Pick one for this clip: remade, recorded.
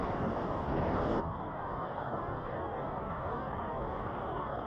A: remade